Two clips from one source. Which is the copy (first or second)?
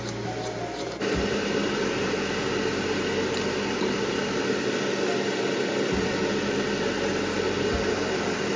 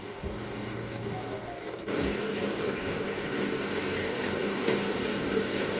second